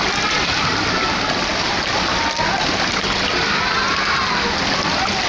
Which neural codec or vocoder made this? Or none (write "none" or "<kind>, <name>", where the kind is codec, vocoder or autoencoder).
none